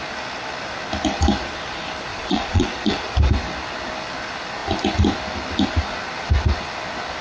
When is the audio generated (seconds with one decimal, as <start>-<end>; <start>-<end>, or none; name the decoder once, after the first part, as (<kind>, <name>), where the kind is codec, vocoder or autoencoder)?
2.1-3.1 (vocoder, Vocos)

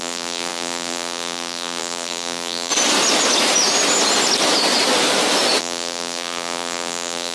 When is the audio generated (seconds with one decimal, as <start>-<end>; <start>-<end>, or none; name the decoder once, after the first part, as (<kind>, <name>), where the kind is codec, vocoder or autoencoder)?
0.0-2.7 (vocoder, BigVGAN v2); 5.6-7.3

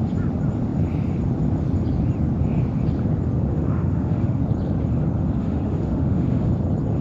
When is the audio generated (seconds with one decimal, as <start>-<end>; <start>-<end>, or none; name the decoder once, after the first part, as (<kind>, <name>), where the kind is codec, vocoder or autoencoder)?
3.5-4.4 (autoencoder, DAC-VAE); 5.4-6.5

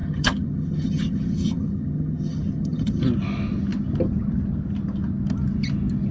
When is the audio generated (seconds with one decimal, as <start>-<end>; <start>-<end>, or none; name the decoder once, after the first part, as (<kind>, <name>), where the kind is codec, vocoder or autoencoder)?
0.0-3.0 (vocoder, HiFi-GAN)

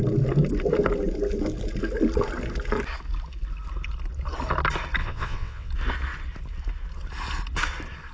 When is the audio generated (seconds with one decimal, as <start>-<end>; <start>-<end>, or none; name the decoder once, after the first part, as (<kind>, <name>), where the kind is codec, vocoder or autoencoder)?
5.0-5.7 (vocoder, WaveNeXt)

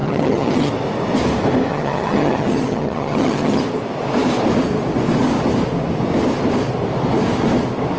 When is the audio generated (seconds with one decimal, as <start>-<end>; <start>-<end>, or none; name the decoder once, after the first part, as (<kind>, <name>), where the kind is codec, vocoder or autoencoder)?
0.0-0.7 (vocoder, HiFi-GAN); 1.7-3.6

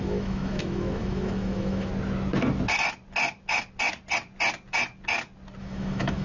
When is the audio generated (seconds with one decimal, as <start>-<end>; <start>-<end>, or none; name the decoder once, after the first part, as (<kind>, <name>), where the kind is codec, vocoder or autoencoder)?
0.0-1.9 (autoencoder, DAC-VAE); 5.6-6.2

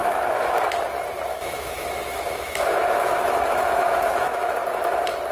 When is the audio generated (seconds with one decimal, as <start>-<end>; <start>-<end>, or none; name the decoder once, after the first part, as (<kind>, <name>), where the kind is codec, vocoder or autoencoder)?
0.0-0.6 (autoencoder, DAC-VAE); 1.3-4.5